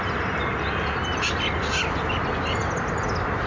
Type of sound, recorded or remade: recorded